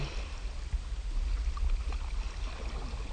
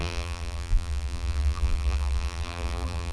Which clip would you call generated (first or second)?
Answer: second